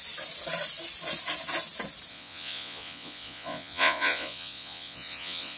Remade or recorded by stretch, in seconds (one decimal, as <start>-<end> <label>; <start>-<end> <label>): 0.0-2.1 recorded; 2.1-5.6 remade